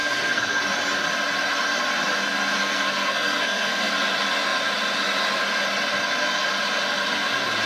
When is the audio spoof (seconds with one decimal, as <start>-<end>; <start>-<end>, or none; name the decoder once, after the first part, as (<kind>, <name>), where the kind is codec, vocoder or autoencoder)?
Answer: 0.0-0.6 (codec, SNAC); 2.6-3.9